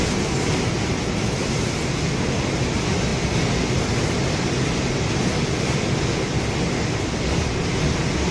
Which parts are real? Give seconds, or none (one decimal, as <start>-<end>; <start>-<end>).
0.0-8.3